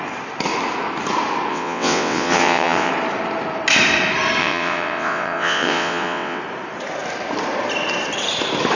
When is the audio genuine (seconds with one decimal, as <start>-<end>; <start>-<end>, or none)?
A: 0.0-1.5; 2.9-4.4; 6.4-8.8